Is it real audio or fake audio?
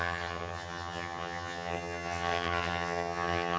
fake